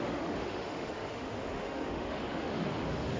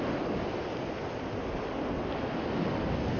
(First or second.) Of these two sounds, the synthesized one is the first